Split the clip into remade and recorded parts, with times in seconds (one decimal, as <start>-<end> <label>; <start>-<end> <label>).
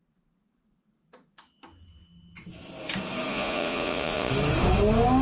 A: 0.0-3.3 recorded; 3.3-4.3 remade; 4.3-5.2 recorded